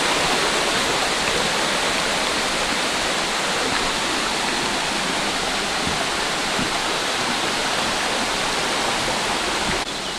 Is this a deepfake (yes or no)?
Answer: no